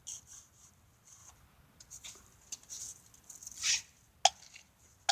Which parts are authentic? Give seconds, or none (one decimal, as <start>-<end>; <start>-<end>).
0.0-5.1